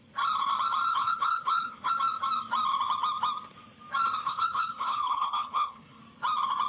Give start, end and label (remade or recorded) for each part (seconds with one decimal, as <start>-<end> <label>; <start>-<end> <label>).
0.0-0.9 recorded; 0.9-1.9 remade; 1.9-4.2 recorded; 4.2-6.0 remade; 6.0-6.7 recorded

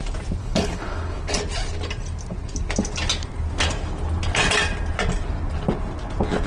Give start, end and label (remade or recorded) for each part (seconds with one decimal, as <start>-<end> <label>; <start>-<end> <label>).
0.0-0.4 recorded; 0.4-1.4 remade; 1.4-6.5 recorded

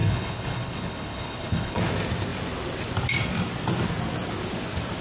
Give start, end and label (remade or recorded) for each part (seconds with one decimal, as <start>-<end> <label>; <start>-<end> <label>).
0.0-1.8 remade; 1.8-5.0 recorded

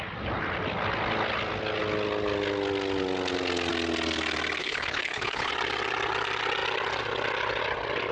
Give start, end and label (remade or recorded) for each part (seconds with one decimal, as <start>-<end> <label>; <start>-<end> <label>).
0.0-4.6 recorded; 4.6-5.5 remade; 5.5-8.1 recorded

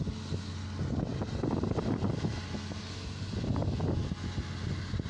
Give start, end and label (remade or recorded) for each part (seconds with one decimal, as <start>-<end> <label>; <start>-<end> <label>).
0.0-5.1 recorded

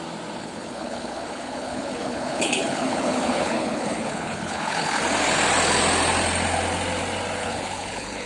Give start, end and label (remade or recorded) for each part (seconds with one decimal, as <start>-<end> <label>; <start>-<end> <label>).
0.0-0.4 recorded; 0.4-5.0 remade; 5.0-7.4 recorded; 7.4-8.3 remade